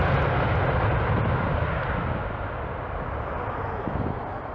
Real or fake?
real